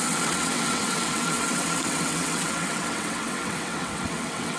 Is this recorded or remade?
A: remade